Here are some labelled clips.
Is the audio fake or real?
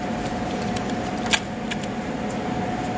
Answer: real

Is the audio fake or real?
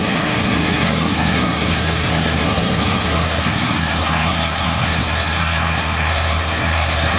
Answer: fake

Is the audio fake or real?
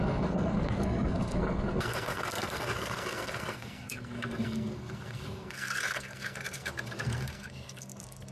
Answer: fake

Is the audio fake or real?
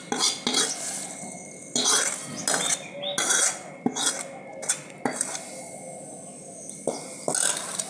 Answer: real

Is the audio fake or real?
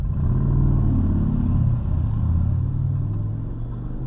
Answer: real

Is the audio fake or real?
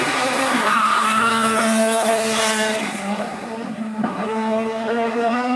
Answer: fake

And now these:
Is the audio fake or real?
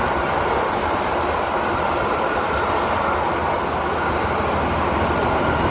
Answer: real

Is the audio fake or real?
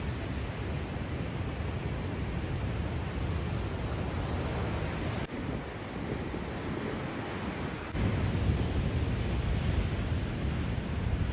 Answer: real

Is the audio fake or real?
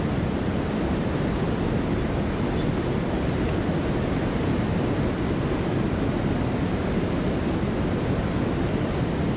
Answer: real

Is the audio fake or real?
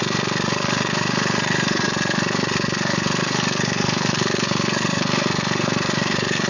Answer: fake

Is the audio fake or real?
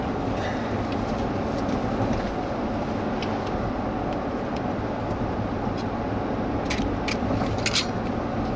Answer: real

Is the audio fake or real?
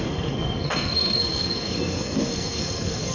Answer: fake